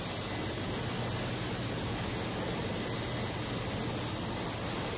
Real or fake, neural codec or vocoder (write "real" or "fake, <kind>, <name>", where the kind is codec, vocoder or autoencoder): real